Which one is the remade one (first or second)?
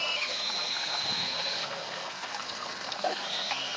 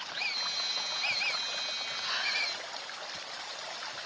first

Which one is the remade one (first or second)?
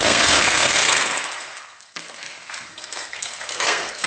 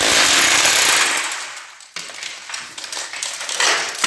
first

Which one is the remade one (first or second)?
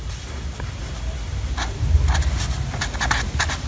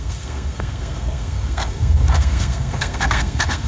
second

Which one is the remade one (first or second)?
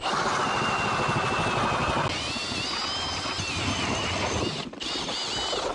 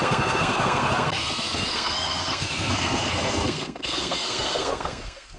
second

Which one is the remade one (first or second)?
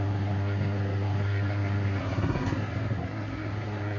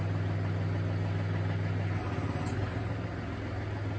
first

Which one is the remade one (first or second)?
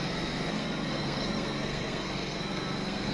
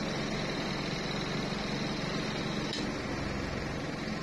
first